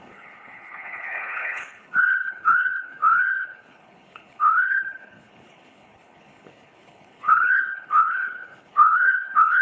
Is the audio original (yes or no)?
no